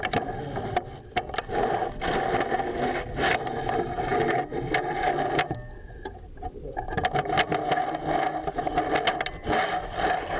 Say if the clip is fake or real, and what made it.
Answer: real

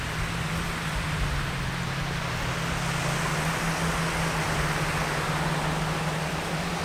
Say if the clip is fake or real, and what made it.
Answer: real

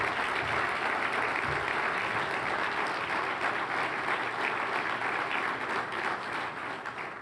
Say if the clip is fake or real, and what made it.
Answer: real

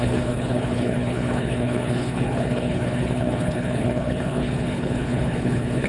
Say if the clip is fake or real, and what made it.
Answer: fake, codec, HILCodec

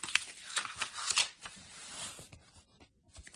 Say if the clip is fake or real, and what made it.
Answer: real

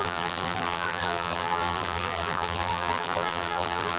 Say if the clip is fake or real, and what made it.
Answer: fake, vocoder, BigVGAN v2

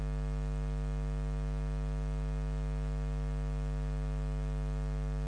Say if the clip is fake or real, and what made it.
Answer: real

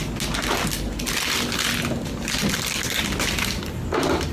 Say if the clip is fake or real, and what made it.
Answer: real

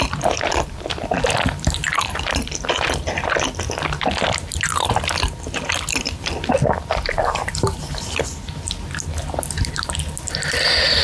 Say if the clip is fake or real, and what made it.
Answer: real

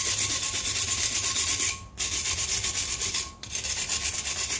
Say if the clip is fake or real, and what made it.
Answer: real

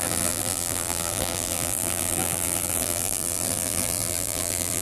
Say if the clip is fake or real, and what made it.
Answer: fake, vocoder, BigVGAN v2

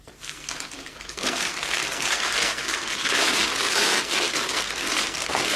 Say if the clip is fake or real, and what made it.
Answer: fake, codec, SNAC